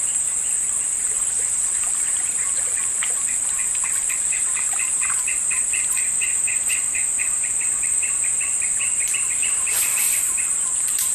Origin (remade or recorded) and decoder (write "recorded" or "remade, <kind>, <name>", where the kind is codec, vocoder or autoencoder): remade, vocoder, BigVGAN v2